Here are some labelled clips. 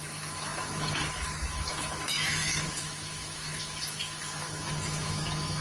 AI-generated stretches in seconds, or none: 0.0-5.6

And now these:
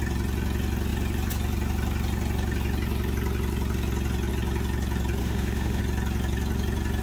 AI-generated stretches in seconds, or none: 5.2-5.8

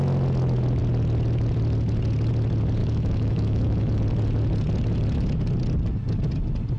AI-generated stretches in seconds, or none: 2.8-4.0

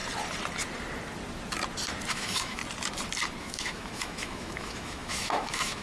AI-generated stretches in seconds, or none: 2.1-2.6; 3.4-5.8

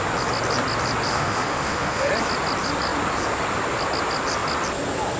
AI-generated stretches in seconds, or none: 1.1-2.1